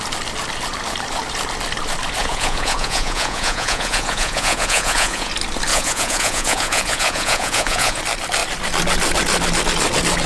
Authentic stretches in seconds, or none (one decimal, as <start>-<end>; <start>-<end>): 0.0-2.2; 5.3-5.7; 8.0-10.3